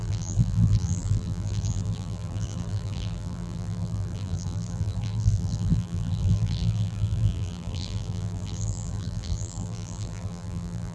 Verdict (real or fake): fake